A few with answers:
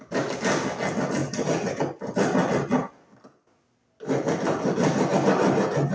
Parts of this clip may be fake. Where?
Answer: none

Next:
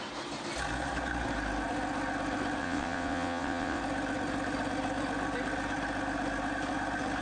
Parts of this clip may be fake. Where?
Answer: 2.6-3.8 (vocoder, WaveNeXt)

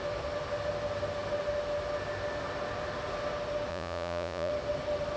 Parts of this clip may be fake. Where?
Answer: 3.7-4.5 (vocoder, Vocos)

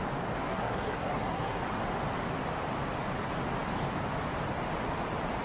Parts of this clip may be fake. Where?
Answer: 0.5-1.6 (codec, SNAC)